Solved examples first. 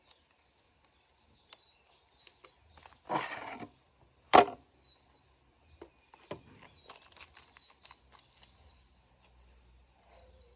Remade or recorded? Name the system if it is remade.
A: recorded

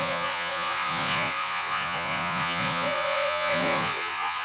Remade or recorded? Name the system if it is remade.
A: remade, vocoder, Vocos